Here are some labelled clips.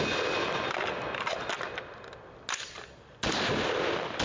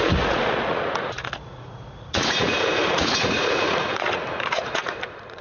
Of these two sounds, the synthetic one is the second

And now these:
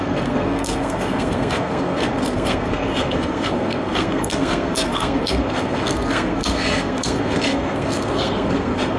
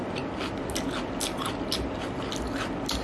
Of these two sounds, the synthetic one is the first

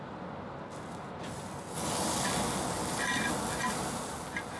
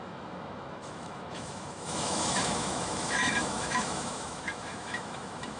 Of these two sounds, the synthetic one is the second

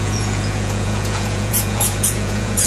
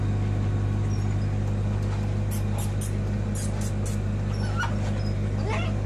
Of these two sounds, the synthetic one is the first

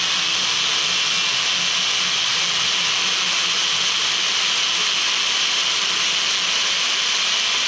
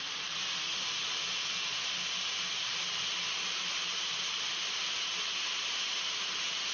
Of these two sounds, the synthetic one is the second